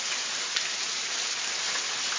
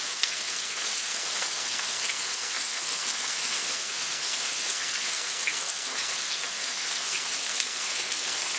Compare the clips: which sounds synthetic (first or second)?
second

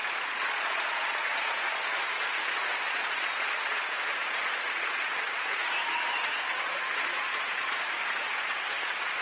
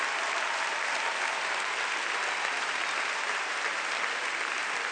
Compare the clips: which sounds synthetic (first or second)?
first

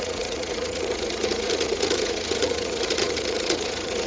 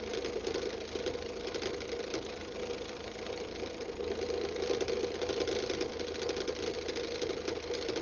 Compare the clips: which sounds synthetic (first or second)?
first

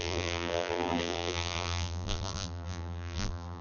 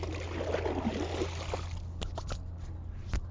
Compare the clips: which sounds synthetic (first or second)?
first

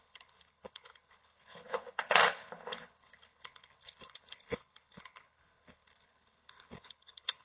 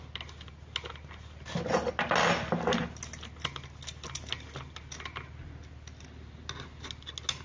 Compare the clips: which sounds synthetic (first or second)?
first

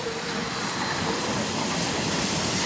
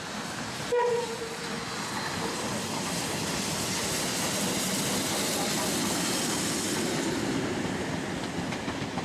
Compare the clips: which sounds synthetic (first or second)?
first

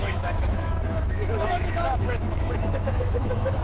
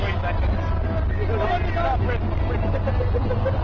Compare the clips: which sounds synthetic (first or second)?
first